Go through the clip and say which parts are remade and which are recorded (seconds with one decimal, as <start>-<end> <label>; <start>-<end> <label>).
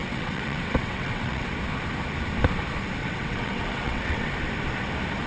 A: 0.0-1.5 remade; 1.5-3.0 recorded; 3.0-4.3 remade; 4.3-5.3 recorded